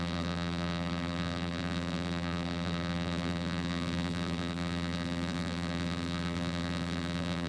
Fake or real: fake